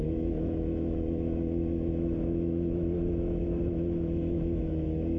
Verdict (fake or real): fake